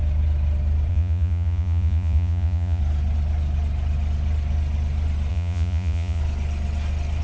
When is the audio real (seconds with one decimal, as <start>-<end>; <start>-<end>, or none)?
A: 0.0-0.9; 2.8-5.3; 6.2-7.2